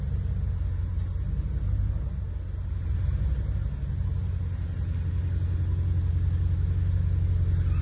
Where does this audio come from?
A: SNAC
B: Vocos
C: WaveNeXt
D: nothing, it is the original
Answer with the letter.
D